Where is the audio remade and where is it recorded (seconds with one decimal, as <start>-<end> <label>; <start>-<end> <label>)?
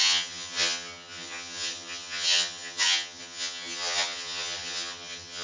0.0-5.4 remade